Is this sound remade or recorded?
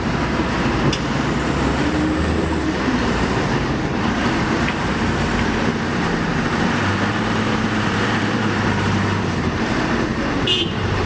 remade